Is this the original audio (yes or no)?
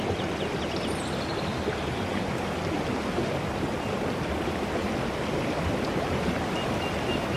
yes